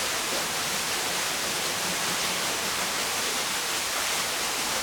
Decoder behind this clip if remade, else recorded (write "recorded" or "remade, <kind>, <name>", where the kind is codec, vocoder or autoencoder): remade, vocoder, BigVGAN v2